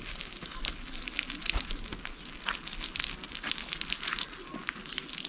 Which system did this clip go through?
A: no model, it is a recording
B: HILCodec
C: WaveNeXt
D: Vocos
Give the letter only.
A